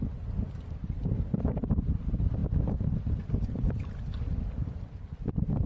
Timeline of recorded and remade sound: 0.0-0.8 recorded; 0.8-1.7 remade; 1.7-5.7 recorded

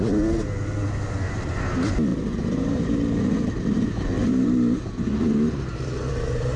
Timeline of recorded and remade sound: 0.0-2.1 recorded; 2.1-6.1 remade; 6.1-6.6 recorded

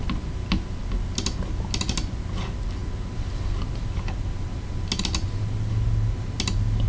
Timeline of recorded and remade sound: 0.0-6.9 recorded

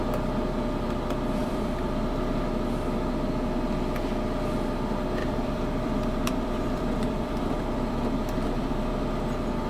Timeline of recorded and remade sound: 0.0-1.4 recorded; 1.4-2.4 remade; 2.4-5.2 recorded; 5.2-8.9 remade; 8.9-9.7 recorded